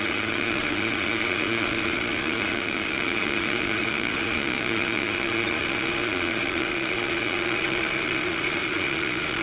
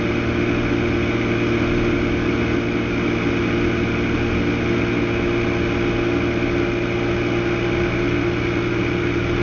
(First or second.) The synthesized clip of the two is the first